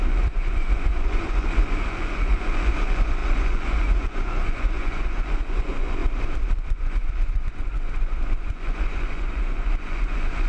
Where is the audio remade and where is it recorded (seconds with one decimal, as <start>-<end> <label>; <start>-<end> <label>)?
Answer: 0.0-6.0 remade; 6.0-6.5 recorded; 6.5-10.5 remade